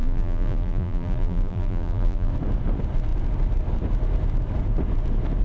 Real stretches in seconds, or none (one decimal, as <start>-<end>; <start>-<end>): 2.3-5.4